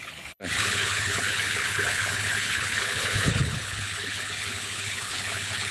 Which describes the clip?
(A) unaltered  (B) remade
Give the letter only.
B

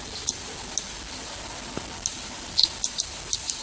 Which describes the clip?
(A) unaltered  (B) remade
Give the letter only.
A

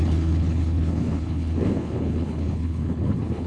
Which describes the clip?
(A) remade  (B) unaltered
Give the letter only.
A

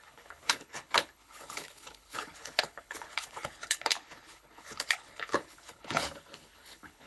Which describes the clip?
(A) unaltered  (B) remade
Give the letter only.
B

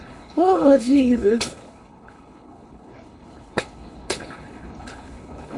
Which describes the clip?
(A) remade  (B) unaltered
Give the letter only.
A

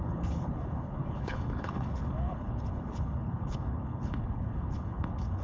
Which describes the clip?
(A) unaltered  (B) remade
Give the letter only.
B